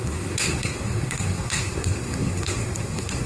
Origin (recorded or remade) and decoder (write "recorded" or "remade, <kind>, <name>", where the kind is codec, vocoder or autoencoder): remade, codec, SNAC